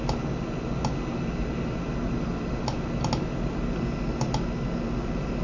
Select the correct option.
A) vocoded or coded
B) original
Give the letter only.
B